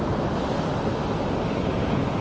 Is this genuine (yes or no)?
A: yes